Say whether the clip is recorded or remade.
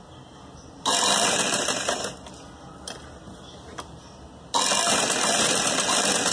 recorded